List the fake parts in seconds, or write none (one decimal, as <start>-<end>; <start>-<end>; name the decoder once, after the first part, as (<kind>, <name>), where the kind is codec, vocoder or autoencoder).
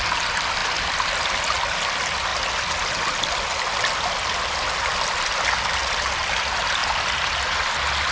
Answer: none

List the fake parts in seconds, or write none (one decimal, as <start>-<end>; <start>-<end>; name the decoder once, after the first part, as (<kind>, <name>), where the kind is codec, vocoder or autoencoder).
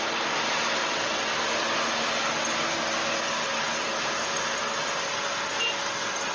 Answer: 0.8-1.3 (vocoder, WaveNeXt)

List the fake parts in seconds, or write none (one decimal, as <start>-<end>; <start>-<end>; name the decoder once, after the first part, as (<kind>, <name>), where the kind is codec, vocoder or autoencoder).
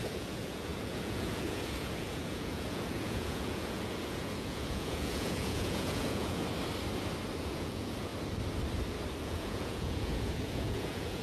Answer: 0.0-6.4 (vocoder, Vocos); 7.4-8.1; 9.2-11.2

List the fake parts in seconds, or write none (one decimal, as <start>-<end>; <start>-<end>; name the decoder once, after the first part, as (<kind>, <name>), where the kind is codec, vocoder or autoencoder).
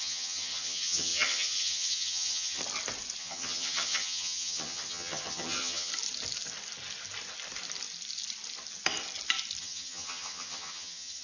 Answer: 0.0-2.6 (vocoder, HiFi-GAN); 3.2-5.9; 9.6-11.2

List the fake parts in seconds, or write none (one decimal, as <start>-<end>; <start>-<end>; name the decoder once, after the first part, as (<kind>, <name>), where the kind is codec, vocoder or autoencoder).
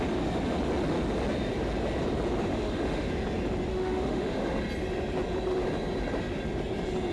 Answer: 2.5-3.1 (autoencoder, DAC-VAE); 3.7-4.6